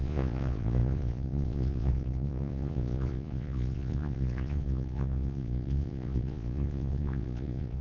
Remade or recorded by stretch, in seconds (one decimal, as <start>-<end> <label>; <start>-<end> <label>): 0.0-7.8 remade